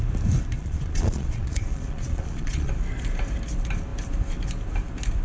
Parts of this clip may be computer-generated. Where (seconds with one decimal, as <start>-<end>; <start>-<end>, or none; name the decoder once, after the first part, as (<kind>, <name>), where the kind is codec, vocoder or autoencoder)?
0.6-2.7 (vocoder, Vocos)